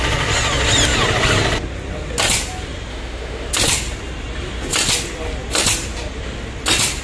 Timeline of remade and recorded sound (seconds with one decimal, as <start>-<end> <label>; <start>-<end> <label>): 0.0-2.9 recorded; 2.9-3.5 remade; 3.5-7.0 recorded

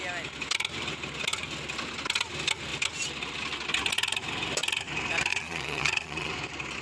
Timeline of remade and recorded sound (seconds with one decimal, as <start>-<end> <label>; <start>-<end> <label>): 0.0-5.3 recorded; 5.3-6.3 remade; 6.3-6.8 recorded

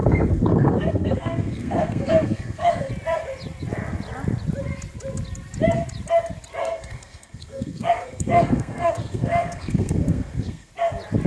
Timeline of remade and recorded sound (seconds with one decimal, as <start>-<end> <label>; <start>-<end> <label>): 0.0-2.9 remade; 2.9-6.6 recorded; 6.6-10.7 remade; 10.7-11.3 recorded

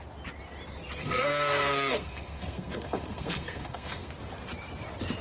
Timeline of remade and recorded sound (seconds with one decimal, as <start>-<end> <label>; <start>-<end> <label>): 0.0-1.0 recorded; 1.0-4.1 remade; 4.1-5.2 recorded

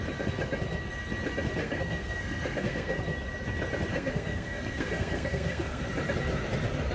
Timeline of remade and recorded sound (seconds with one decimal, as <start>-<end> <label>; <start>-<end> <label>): 0.0-1.6 recorded; 1.6-3.0 remade; 3.0-3.9 recorded; 3.9-5.8 remade; 5.8-6.9 recorded

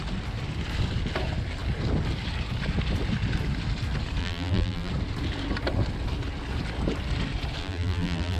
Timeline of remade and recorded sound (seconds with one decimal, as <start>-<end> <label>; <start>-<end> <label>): 0.0-4.2 recorded; 4.2-4.9 remade; 4.9-7.6 recorded; 7.6-8.4 remade

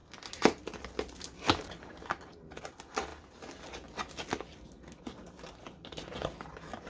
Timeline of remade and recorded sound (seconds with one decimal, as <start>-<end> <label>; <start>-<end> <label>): 0.0-6.9 recorded